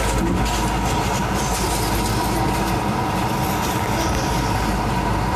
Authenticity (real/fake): real